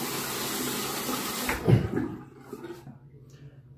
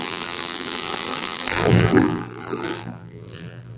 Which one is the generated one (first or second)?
second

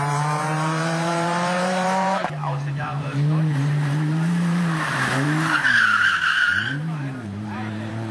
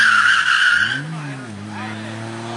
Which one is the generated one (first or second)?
first